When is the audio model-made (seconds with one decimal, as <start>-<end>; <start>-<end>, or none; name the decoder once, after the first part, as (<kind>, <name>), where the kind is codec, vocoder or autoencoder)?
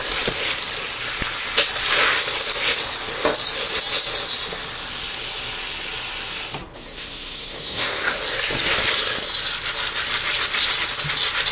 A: 6.6-8.2 (codec, SNAC)